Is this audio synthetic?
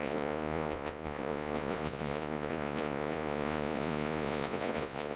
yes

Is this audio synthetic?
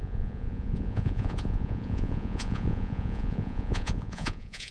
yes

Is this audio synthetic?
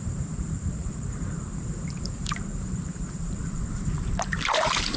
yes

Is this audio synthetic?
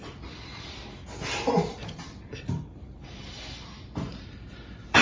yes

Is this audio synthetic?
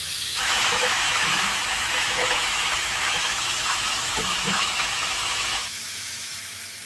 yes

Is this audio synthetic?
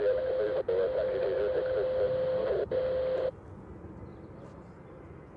no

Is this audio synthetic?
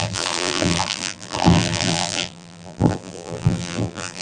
yes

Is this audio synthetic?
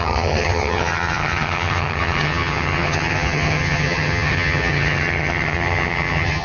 yes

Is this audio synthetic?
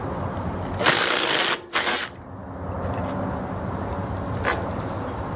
no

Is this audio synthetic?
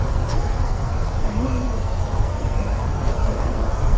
yes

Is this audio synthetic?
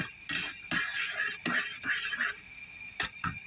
no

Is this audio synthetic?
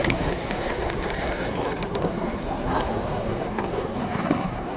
yes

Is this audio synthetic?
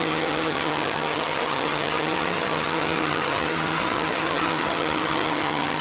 yes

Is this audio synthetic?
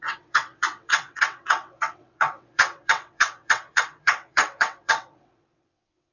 yes